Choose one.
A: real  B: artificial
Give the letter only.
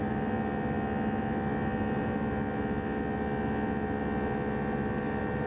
A